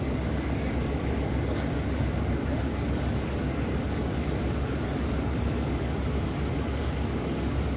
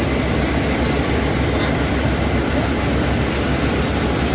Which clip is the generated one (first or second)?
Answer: first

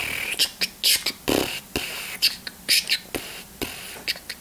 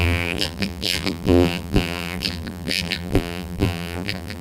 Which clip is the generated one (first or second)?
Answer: second